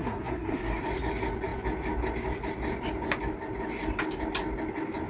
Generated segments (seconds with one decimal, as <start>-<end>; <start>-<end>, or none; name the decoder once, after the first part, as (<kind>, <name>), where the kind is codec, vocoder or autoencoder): 0.0-0.8 (codec, SNAC)

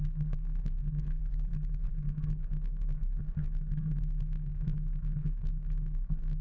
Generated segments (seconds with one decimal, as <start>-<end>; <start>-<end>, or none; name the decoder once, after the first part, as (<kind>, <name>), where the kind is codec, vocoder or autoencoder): 0.0-1.2 (codec, SNAC); 1.9-6.4

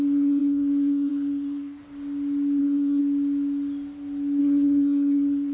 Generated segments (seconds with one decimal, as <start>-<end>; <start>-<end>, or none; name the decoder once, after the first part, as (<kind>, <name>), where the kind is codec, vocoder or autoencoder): 0.0-1.8 (codec, SNAC); 2.6-3.0; 4.4-5.5

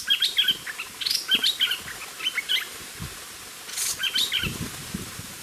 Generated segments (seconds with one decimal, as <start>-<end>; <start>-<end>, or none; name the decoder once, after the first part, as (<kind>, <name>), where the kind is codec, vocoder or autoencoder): none

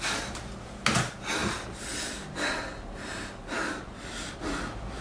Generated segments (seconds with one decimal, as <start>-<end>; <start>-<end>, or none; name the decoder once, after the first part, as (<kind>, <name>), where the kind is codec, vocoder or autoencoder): none

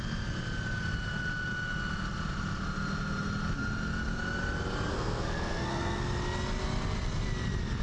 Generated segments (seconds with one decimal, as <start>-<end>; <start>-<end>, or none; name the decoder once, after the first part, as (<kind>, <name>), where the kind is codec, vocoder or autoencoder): 4.9-6.0 (codec, SNAC)

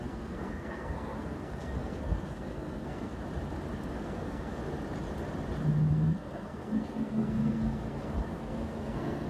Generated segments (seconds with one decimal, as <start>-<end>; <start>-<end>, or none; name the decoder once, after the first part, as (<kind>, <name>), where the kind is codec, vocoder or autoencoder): 0.0-3.1 (codec, SNAC); 3.9-4.6; 5.9-9.3